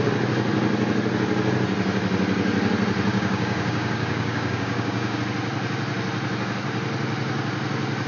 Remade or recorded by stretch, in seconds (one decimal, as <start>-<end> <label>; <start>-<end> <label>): 0.0-3.1 recorded; 3.1-5.2 remade; 5.2-8.1 recorded

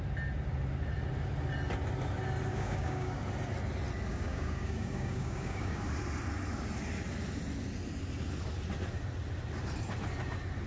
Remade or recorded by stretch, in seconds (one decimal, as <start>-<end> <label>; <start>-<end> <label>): 0.0-2.5 recorded; 2.5-3.2 remade; 3.2-4.1 recorded; 4.1-5.8 remade; 5.8-10.7 recorded